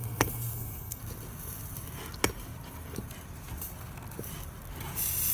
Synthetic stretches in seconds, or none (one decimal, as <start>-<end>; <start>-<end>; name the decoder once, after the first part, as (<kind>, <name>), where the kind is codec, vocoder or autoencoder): 0.0-1.0 (codec, SNAC)